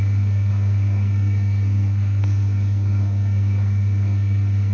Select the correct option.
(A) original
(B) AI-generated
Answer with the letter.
B